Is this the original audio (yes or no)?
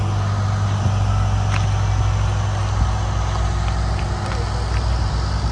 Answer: yes